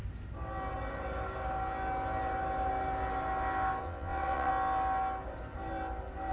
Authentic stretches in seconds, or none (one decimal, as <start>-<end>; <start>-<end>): 0.0-3.8; 4.5-6.3